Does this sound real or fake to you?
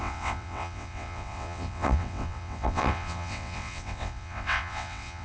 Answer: fake